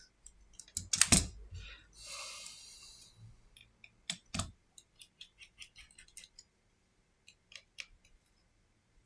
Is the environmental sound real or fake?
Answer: real